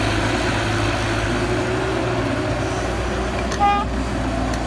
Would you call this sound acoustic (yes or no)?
yes